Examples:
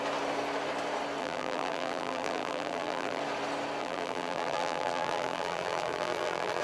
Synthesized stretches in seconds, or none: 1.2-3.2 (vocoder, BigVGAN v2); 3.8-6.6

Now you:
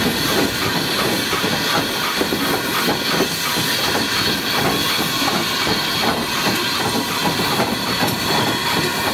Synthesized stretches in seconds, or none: 7.2-7.9 (vocoder, BigVGAN v2)

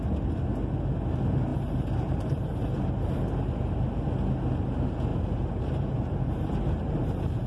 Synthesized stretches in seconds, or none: 1.5-3.1 (vocoder, BigVGAN v2); 5.1-7.5